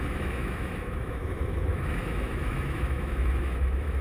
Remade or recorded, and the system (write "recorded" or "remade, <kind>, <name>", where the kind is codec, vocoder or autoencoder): remade, autoencoder, DAC-VAE